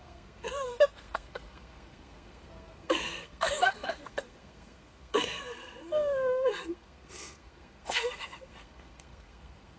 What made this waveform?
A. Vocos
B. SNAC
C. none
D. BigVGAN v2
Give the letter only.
B